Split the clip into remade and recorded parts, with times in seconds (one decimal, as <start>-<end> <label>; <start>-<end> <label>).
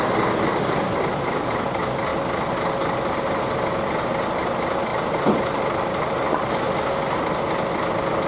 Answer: 0.0-0.5 recorded; 0.5-1.5 remade; 1.5-4.9 recorded; 4.9-6.5 remade; 6.5-8.3 recorded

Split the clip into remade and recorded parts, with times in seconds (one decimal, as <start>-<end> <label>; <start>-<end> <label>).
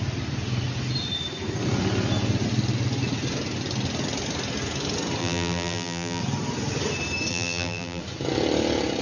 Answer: 0.0-5.2 recorded; 5.2-6.2 remade; 6.2-7.3 recorded; 7.3-8.0 remade; 8.0-9.0 recorded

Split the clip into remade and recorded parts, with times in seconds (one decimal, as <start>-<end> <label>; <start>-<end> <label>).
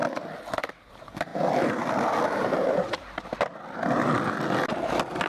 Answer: 0.0-0.9 recorded; 0.9-1.3 remade; 1.3-2.2 recorded; 2.2-3.3 remade; 3.3-5.3 recorded